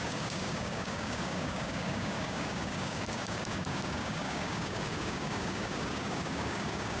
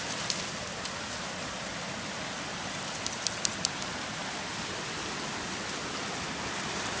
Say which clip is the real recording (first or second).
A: second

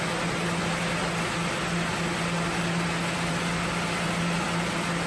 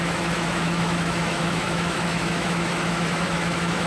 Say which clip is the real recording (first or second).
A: first